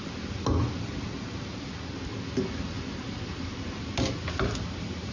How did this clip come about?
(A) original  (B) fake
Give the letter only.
A